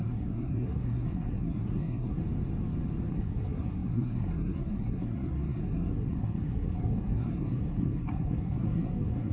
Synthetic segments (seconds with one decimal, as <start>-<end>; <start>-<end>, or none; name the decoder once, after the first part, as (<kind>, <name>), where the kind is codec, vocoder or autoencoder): 0.0-2.2 (codec, SNAC); 3.1-9.3